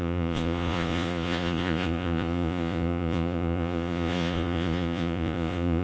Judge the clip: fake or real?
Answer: fake